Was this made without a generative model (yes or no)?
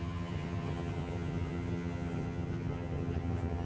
no